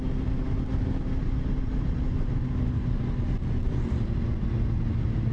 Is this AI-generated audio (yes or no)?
no